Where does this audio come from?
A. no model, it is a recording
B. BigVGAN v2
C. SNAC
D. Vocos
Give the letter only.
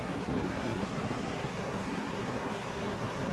C